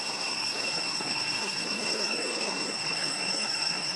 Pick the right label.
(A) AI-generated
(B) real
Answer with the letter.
A